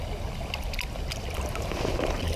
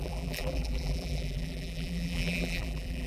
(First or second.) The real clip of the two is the first